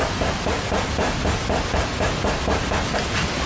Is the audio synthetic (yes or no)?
no